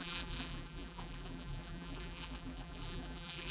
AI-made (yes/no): yes